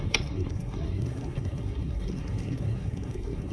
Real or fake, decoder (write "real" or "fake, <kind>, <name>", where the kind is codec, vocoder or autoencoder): fake, codec, SNAC